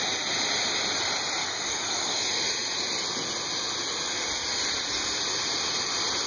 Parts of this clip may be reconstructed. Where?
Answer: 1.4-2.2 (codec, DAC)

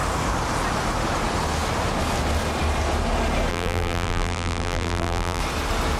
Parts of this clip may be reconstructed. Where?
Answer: 3.5-5.4 (vocoder, BigVGAN v2)

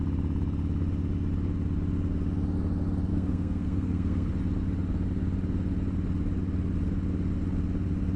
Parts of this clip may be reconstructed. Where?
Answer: 3.1-4.3 (codec, SNAC)

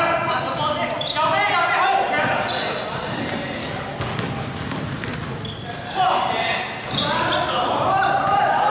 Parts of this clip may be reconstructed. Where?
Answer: 3.6-4.3 (codec, DAC)

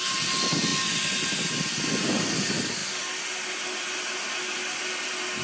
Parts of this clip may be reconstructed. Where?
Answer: none

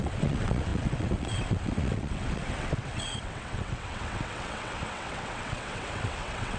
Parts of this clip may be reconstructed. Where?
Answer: 0.0-6.6 (vocoder, WaveNeXt)

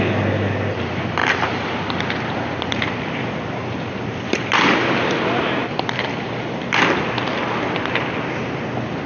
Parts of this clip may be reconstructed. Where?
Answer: 1.2-5.4 (vocoder, BigVGAN v2)